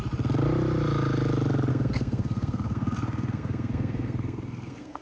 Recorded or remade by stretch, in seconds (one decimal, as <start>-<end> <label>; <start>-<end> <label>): 0.0-1.7 recorded; 1.7-5.0 remade